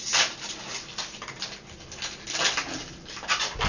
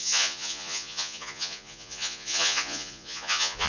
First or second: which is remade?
second